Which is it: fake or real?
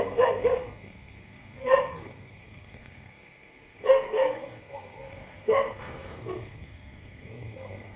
fake